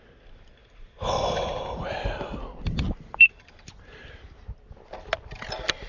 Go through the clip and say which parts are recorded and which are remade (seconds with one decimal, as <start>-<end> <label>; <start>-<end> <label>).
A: 0.0-5.9 recorded